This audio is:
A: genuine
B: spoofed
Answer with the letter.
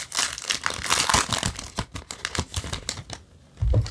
A